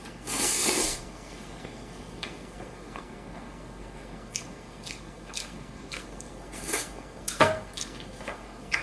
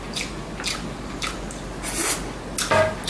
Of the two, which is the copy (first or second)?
first